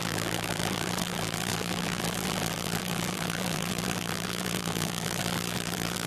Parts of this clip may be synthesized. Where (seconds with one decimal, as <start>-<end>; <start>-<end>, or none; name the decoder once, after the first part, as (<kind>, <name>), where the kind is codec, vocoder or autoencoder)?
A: 0.0-6.1 (vocoder, BigVGAN v2)